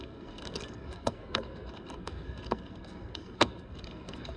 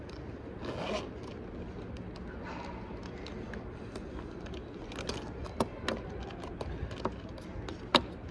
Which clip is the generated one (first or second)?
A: first